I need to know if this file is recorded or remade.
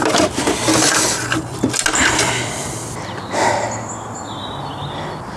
recorded